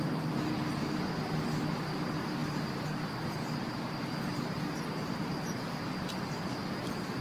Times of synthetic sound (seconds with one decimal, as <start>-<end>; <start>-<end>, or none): none